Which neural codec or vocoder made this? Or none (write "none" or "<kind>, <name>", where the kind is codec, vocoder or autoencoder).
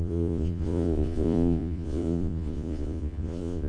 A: vocoder, Vocos